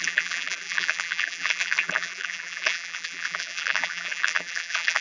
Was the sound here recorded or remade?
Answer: remade